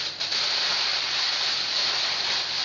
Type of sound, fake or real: real